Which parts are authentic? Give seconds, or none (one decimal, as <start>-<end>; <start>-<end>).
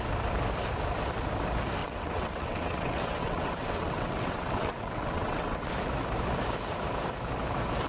0.0-1.8; 5.7-7.9